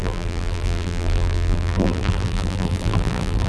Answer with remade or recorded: remade